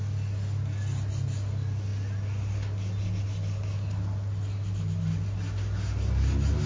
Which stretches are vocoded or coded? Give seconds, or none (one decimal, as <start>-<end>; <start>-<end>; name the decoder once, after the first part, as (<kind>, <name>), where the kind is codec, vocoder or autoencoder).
none